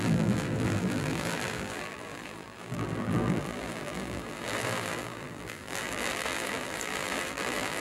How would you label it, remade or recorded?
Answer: remade